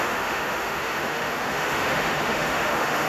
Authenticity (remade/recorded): remade